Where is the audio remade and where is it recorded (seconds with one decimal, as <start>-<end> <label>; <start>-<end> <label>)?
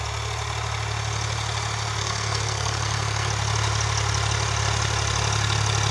0.0-2.0 recorded; 2.0-3.3 remade; 3.3-5.9 recorded